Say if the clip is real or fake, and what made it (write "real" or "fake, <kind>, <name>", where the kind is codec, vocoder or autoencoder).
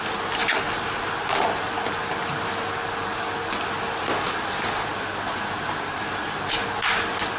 real